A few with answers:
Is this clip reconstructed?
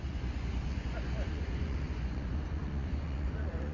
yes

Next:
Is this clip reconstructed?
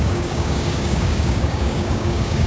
yes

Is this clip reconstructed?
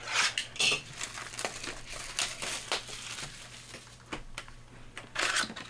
no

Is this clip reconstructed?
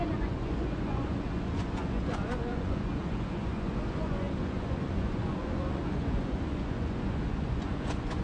yes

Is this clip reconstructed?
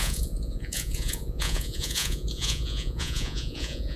yes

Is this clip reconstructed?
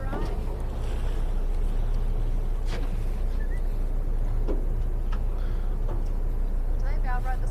no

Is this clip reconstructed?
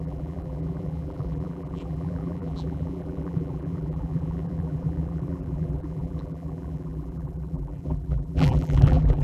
yes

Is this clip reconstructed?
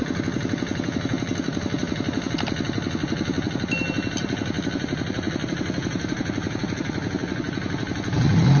no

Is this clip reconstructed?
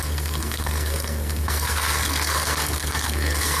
yes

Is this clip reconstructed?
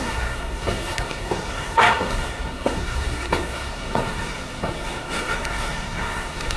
yes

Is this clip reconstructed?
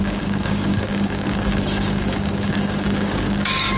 yes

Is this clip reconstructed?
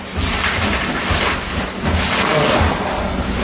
no